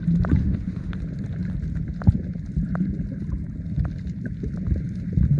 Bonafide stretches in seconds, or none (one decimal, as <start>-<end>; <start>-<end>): 0.0-0.4; 0.9-5.4